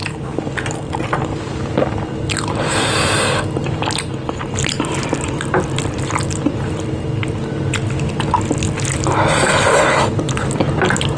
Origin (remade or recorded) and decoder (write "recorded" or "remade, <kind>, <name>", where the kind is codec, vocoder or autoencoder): recorded